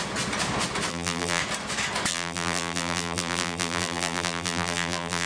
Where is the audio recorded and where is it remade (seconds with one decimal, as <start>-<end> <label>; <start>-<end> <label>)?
0.0-0.9 recorded; 0.9-1.4 remade; 1.4-2.1 recorded; 2.1-5.3 remade